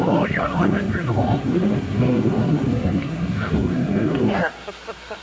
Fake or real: fake